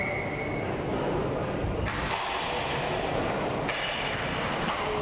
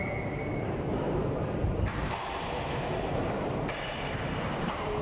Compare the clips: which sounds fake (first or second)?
second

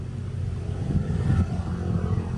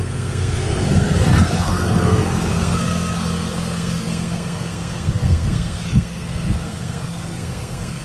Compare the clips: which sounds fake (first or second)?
second